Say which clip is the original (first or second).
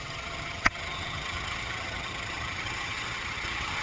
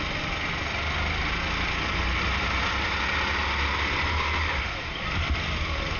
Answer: second